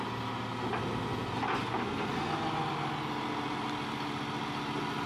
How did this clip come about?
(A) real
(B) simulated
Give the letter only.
A